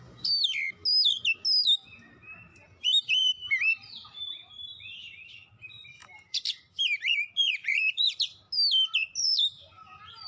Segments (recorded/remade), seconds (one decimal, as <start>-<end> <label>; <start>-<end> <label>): 0.0-2.5 recorded; 2.5-4.2 remade; 4.2-6.0 recorded; 6.0-8.5 remade; 8.5-10.3 recorded